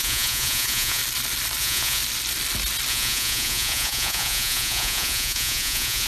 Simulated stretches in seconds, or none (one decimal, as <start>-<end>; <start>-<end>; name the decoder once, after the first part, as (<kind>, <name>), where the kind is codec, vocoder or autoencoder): 0.0-1.0 (vocoder, Vocos); 1.6-2.0; 2.9-6.1